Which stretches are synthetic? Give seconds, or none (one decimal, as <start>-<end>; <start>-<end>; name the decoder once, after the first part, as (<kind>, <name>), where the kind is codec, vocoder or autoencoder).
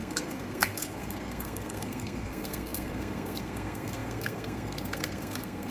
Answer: 0.0-5.7 (codec, SNAC)